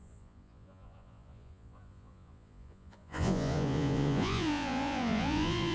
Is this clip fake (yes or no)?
yes